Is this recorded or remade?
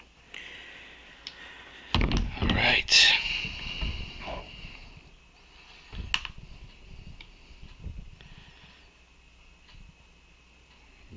recorded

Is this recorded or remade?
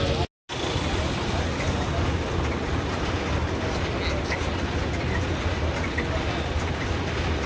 recorded